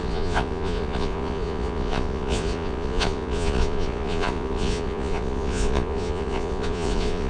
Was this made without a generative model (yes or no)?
no